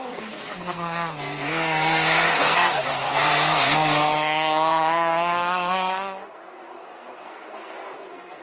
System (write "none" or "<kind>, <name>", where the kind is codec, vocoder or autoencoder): codec, SNAC